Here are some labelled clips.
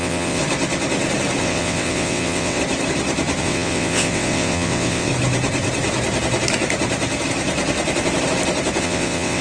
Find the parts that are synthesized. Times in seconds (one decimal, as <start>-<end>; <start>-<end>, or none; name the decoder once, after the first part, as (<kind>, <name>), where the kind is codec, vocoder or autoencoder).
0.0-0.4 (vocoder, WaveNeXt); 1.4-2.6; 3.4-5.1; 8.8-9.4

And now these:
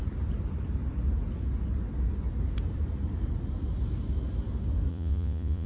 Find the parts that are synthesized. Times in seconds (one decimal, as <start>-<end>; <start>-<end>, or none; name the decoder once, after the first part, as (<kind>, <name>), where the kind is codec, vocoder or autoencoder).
4.9-5.7 (vocoder, Vocos)

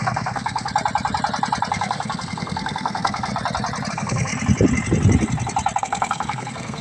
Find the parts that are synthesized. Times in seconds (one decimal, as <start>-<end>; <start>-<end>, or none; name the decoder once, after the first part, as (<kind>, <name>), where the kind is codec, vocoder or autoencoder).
0.0-0.7 (codec, SNAC); 1.7-3.3; 3.9-4.3; 5.8-6.8

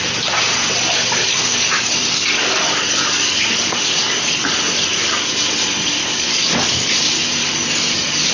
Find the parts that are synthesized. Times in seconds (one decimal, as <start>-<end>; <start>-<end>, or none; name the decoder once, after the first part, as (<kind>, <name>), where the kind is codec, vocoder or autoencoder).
1.2-5.3 (codec, DAC); 6.0-6.9; 7.4-8.3

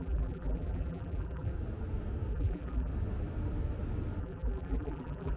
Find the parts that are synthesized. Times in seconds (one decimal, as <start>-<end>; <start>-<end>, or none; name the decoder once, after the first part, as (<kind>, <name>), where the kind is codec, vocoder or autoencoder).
0.0-1.5 (vocoder, BigVGAN v2); 2.3-2.9; 4.2-5.4

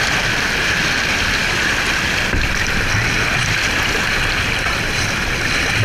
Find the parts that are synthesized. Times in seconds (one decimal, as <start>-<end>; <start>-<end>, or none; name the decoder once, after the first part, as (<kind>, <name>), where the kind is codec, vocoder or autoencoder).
none

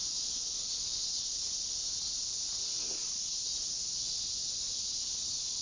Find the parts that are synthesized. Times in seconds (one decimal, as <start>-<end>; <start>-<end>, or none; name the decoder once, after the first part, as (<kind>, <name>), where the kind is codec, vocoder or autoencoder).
none

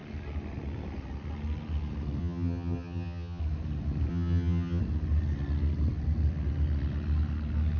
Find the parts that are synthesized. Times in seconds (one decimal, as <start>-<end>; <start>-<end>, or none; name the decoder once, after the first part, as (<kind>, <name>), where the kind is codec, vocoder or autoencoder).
2.2-3.4 (vocoder, HiFi-GAN); 4.1-4.8